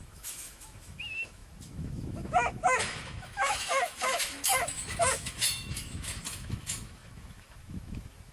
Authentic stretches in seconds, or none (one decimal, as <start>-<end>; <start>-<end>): none